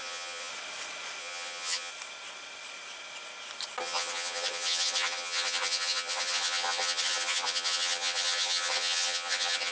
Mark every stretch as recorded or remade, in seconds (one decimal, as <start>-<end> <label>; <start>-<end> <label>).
0.0-0.5 remade; 0.5-1.2 recorded; 1.2-1.9 remade; 1.9-3.8 recorded; 3.8-9.7 remade